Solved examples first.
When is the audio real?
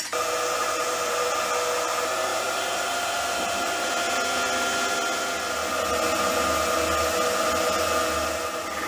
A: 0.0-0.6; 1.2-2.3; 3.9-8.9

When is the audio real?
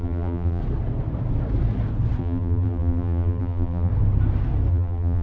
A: 0.6-2.2; 3.9-4.7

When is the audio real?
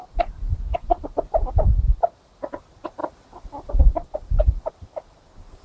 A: 0.0-5.6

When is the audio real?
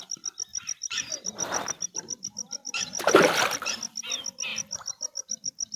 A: 0.0-0.5; 3.2-4.5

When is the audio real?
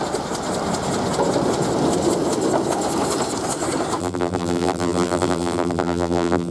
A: 0.0-4.0